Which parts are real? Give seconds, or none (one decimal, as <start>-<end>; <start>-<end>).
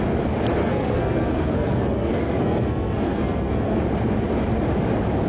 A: 0.0-0.6; 3.8-5.3